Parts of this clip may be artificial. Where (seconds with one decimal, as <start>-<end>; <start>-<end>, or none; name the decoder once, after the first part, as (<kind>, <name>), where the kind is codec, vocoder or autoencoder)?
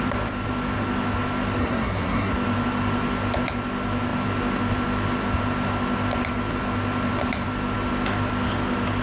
1.6-2.3 (codec, SNAC)